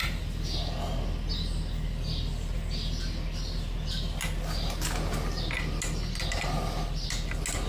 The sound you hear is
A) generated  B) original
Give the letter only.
B